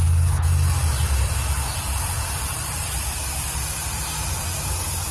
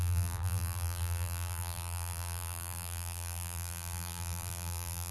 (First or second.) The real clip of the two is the first